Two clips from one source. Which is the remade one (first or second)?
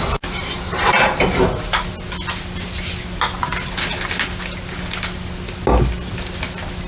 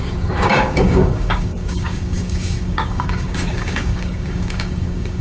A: second